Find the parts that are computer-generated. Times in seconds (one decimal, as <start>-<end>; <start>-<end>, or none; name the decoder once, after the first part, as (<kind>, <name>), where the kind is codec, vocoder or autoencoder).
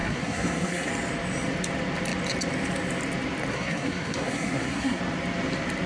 0.0-0.9 (codec, SNAC); 3.5-5.0